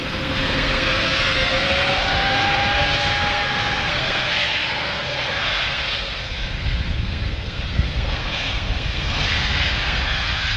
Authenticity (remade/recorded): remade